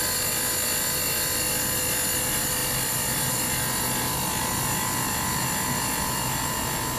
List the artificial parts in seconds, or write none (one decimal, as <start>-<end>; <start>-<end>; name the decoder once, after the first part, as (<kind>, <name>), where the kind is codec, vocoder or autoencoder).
none